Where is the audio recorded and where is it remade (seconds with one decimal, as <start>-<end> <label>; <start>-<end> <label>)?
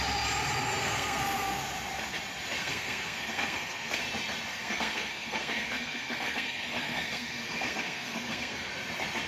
0.0-0.8 recorded; 0.8-1.6 remade; 1.6-2.6 recorded; 2.6-4.0 remade; 4.0-4.5 recorded; 4.5-8.7 remade; 8.7-9.3 recorded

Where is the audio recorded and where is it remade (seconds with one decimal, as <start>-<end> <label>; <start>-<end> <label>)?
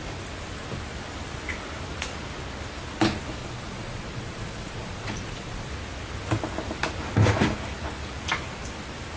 0.0-3.4 recorded; 3.4-5.7 remade; 5.7-9.2 recorded